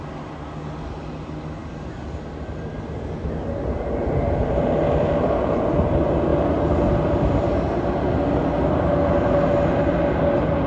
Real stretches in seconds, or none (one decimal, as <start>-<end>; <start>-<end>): 0.0-1.6; 5.7-10.7